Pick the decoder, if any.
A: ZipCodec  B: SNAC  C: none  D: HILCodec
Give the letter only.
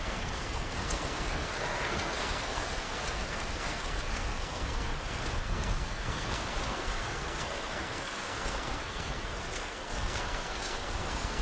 B